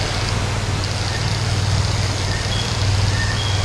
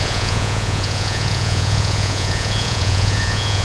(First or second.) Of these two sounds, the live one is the first